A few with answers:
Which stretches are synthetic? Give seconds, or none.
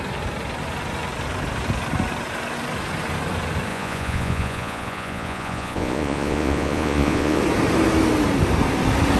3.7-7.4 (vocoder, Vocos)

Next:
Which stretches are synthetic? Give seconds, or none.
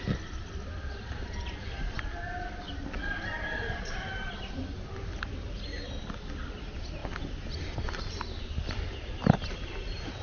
none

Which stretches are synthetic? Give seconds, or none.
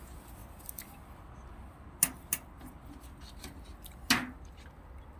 none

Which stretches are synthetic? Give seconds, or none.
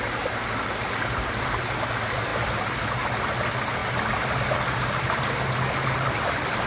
none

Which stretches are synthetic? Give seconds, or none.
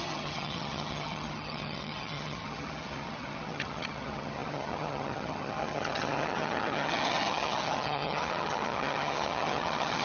0.0-10.0 (vocoder, HiFi-GAN)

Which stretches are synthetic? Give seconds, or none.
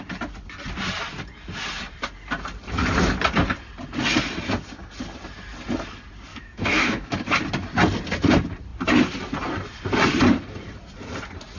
6.3-7.1 (autoencoder, DAC-VAE)